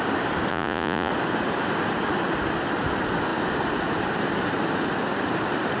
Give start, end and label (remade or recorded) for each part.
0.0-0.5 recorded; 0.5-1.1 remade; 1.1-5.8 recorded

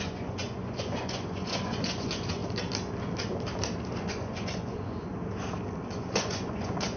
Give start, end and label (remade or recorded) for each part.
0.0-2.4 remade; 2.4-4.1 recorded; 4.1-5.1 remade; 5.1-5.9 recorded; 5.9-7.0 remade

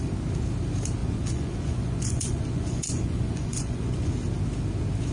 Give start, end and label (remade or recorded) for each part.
0.0-1.0 recorded; 1.0-4.1 remade; 4.1-5.1 recorded

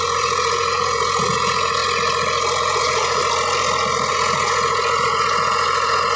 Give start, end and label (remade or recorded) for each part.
0.0-1.8 remade; 1.8-2.6 recorded; 2.6-3.2 remade; 3.2-4.1 recorded; 4.1-6.2 remade

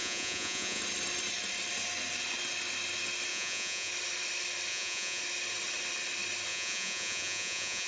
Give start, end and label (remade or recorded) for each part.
0.0-0.8 remade; 0.8-3.3 recorded; 3.3-3.9 remade; 3.9-4.7 recorded; 4.7-5.2 remade; 5.2-6.5 recorded; 6.5-7.9 remade

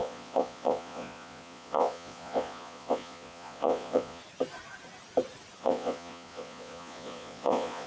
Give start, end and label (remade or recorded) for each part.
0.0-4.2 remade; 4.2-5.6 recorded; 5.6-7.9 remade